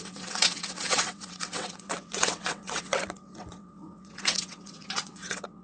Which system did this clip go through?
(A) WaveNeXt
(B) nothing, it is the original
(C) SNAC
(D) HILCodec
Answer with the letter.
A